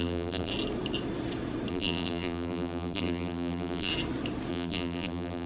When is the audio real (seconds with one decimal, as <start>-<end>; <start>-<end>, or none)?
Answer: 0.5-1.7; 3.9-4.5